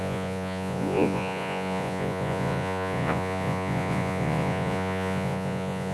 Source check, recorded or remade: remade